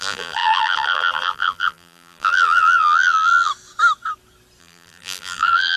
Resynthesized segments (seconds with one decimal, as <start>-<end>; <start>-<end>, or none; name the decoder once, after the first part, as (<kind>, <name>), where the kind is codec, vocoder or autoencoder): 0.0-3.5 (vocoder, BigVGAN v2); 4.6-5.8